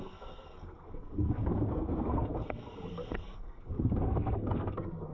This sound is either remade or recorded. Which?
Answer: remade